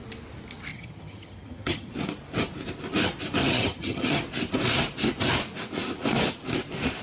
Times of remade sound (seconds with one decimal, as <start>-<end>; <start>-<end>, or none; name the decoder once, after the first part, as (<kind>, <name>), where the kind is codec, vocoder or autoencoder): 0.7-1.9 (vocoder, HiFi-GAN); 3.4-4.2